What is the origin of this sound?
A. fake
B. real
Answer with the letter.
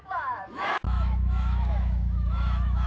A